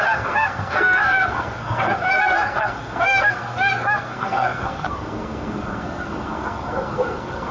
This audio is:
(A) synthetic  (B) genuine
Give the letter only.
A